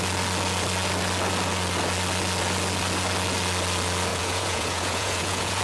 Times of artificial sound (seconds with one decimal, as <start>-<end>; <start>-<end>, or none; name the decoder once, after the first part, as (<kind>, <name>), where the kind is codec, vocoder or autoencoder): 4.1-5.6 (vocoder, Vocos)